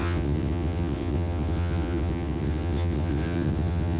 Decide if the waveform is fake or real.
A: fake